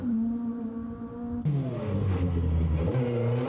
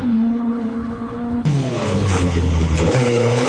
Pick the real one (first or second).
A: first